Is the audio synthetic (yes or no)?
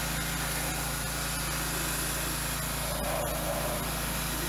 no